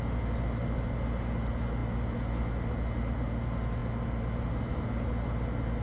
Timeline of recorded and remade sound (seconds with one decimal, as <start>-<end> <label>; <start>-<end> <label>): 0.0-5.8 recorded